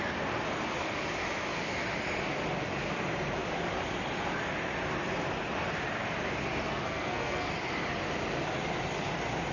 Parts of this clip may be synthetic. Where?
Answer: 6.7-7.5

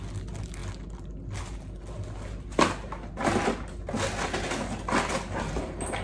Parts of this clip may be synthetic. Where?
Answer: none

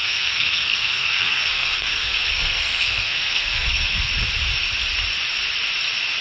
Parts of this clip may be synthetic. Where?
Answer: 0.0-4.1

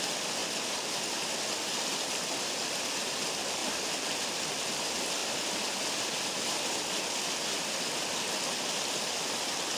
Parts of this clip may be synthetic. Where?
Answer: none

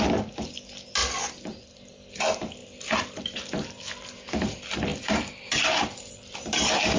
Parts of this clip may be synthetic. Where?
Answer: 4.9-5.6

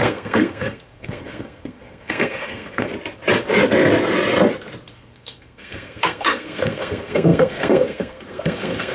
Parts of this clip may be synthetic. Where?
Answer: 0.0-2.9; 4.9-8.9